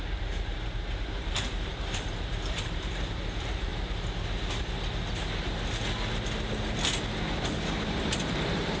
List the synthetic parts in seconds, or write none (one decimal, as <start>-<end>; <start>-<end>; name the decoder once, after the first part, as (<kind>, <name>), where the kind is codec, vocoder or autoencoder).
0.0-3.7 (vocoder, BigVGAN v2); 8.2-8.8